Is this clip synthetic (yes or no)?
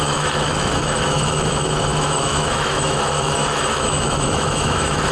yes